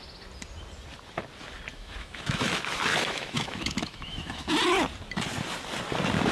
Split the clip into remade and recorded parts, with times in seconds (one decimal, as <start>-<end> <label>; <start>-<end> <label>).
0.0-1.7 recorded; 1.7-2.5 remade; 2.5-2.9 recorded; 2.9-4.5 remade; 4.5-6.3 recorded